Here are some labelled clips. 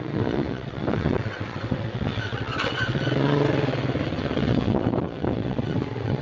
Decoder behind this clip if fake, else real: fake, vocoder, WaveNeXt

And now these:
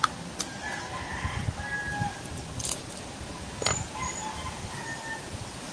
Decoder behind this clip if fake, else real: real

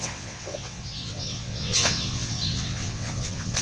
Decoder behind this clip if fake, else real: fake, vocoder, WaveNeXt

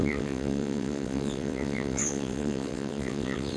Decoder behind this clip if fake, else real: fake, vocoder, WaveNeXt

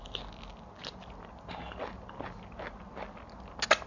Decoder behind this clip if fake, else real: real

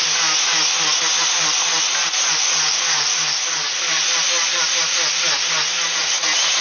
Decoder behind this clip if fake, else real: real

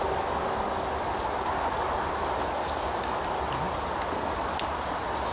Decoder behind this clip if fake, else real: real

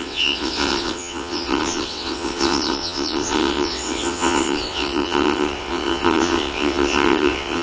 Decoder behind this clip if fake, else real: fake, vocoder, WaveNeXt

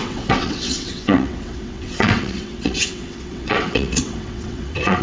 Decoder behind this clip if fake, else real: fake, vocoder, WaveNeXt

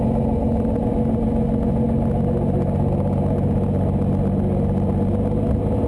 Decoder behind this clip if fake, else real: real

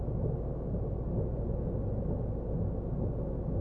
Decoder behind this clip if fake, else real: real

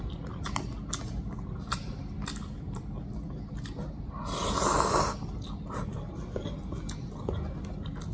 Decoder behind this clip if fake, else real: real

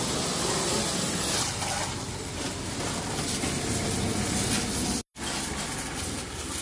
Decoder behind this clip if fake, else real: real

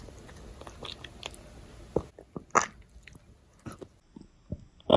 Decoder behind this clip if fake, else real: real